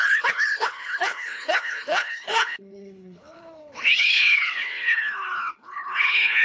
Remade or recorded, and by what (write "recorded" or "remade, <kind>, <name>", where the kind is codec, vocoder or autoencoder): remade, codec, HILCodec